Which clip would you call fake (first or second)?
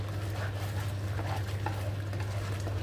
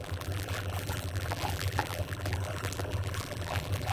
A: second